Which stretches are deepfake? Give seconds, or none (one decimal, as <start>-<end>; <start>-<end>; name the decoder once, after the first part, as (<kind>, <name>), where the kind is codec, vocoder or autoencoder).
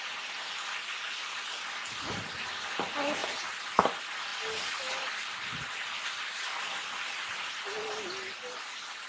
none